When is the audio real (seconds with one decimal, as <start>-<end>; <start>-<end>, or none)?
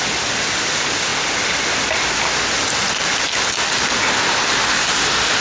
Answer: 0.0-5.4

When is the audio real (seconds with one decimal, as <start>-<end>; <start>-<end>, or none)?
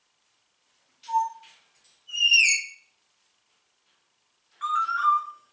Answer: 0.0-5.0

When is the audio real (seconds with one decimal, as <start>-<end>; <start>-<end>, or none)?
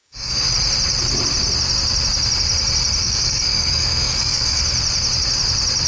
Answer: 0.5-3.0; 4.6-5.9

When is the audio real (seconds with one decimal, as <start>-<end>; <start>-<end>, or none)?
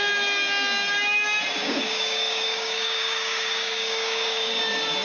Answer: 0.0-1.6; 4.6-5.0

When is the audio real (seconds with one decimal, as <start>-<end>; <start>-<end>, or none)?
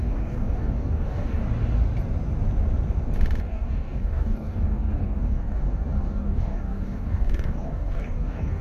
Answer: 1.4-3.4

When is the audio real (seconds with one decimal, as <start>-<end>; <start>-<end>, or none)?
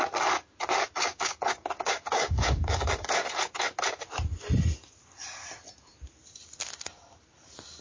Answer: 0.0-1.1; 2.9-7.8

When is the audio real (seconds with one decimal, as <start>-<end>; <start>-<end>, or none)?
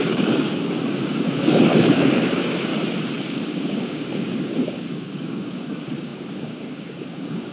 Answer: 2.7-3.3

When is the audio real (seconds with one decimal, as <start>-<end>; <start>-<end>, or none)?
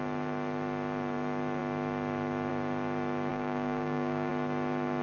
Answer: 0.0-3.3; 4.3-5.0